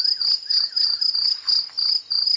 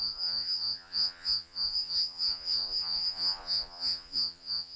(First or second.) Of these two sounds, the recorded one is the first